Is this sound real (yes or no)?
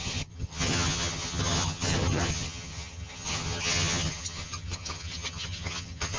no